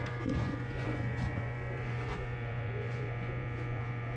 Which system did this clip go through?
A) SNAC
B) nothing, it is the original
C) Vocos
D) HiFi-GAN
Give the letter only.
C